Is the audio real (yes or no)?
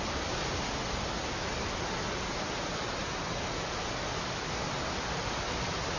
yes